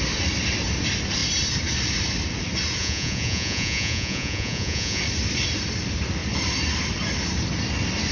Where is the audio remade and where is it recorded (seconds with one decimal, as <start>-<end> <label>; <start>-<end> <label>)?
0.0-2.8 recorded; 2.8-5.0 remade; 5.0-8.1 recorded